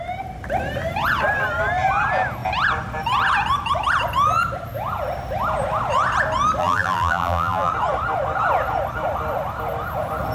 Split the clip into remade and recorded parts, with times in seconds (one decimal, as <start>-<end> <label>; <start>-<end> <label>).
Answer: 0.0-6.6 recorded; 6.6-7.7 remade; 7.7-10.3 recorded